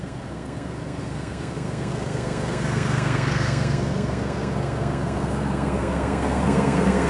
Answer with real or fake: fake